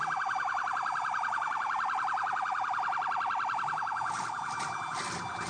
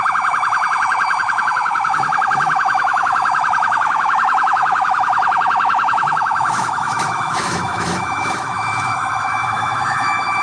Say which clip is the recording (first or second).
first